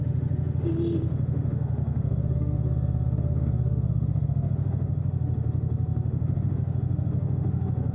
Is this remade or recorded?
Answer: remade